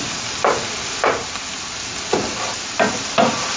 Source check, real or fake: real